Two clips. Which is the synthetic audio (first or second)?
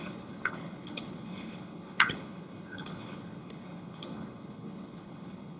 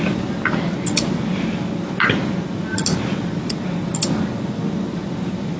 first